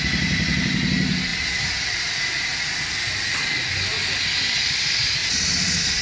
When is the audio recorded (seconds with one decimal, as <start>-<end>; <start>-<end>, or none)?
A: 0.0-1.3; 2.1-5.2